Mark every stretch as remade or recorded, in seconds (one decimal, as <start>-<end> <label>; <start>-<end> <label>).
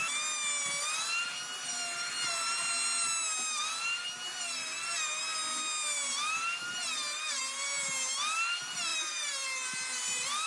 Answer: 0.0-8.9 recorded; 8.9-10.5 remade